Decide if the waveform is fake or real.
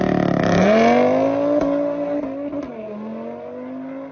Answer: real